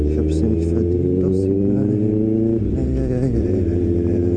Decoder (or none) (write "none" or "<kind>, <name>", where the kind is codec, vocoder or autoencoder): none